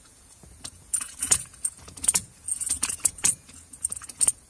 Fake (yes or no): yes